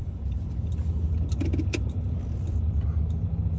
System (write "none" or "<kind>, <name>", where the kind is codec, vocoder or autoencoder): none